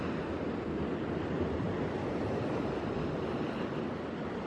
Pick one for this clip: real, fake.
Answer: real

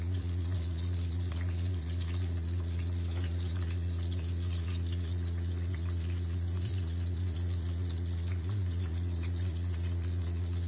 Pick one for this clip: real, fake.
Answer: fake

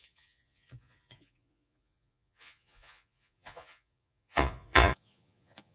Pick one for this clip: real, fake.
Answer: fake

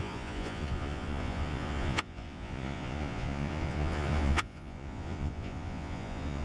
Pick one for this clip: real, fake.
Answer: fake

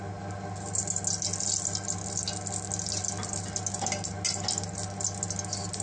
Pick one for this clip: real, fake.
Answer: real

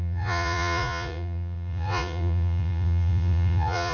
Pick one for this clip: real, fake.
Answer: fake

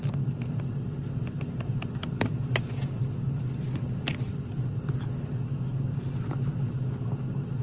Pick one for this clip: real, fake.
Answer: real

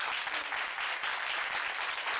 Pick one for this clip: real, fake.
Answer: real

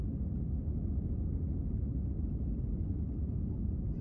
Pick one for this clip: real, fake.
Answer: real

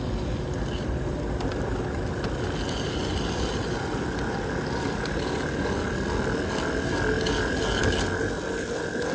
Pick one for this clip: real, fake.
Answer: real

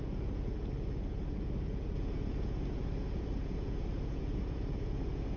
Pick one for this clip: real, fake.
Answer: fake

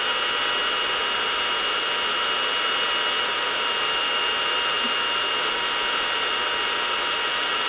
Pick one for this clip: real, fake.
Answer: real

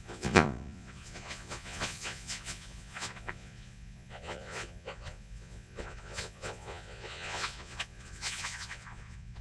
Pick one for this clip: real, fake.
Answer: fake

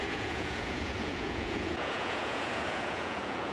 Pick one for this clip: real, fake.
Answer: fake